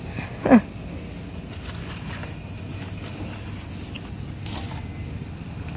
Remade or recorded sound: recorded